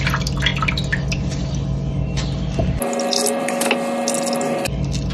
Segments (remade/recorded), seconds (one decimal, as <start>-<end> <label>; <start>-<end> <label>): 0.0-5.1 recorded